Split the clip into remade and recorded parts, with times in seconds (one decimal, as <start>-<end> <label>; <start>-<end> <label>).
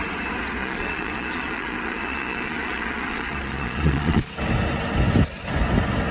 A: 0.0-0.6 recorded; 0.6-4.3 remade; 4.3-6.1 recorded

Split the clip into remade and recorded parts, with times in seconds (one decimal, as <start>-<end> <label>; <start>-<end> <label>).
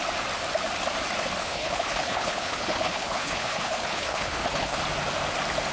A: 0.0-1.4 recorded; 1.4-4.8 remade; 4.8-5.7 recorded